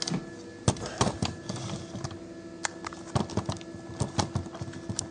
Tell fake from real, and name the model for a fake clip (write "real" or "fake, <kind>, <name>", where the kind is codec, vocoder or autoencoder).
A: real